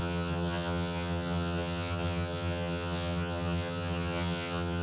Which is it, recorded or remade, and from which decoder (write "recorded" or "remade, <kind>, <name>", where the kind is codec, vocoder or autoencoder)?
remade, vocoder, HiFi-GAN